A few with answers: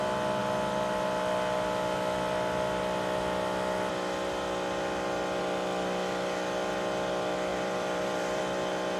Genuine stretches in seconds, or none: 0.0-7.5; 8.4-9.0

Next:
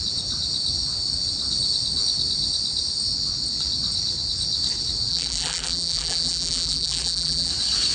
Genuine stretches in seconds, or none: 0.0-5.1; 7.5-7.9

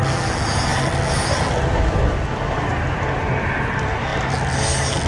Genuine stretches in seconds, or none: 0.0-5.1